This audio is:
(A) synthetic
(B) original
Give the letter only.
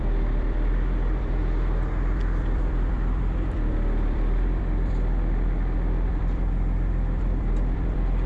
A